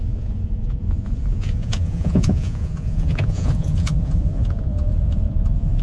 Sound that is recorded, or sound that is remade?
remade